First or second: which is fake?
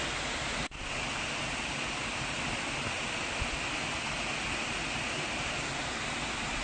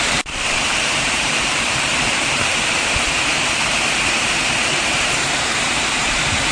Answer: second